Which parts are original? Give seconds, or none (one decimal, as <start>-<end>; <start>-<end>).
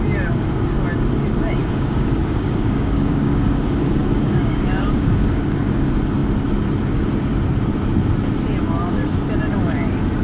0.0-1.6; 5.8-10.2